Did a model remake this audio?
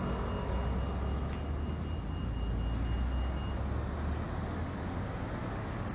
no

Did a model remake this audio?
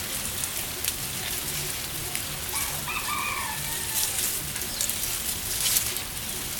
no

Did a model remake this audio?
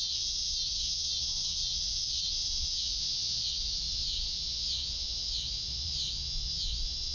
yes